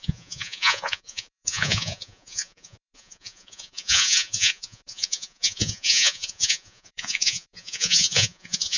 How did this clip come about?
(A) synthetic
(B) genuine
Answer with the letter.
A